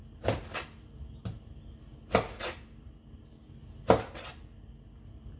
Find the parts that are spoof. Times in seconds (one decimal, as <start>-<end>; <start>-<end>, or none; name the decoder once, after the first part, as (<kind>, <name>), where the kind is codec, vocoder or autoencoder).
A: none